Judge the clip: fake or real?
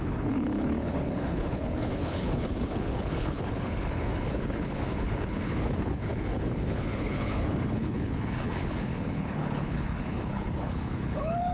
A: fake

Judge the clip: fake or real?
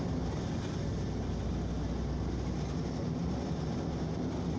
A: real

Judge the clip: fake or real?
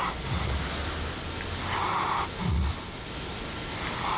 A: real